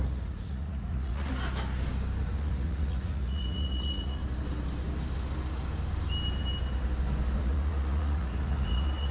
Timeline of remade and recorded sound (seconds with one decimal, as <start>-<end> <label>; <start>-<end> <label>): 0.0-1.3 remade; 1.3-2.2 recorded; 2.2-4.2 remade; 4.2-7.4 recorded; 7.4-9.1 remade